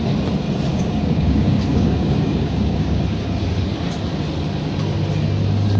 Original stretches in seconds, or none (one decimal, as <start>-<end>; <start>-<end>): 0.0-0.7; 3.0-5.8